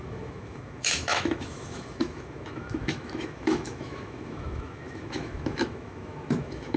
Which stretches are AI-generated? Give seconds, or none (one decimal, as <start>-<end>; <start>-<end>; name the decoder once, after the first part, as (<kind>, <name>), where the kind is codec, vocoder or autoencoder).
0.0-6.8 (autoencoder, DAC-VAE)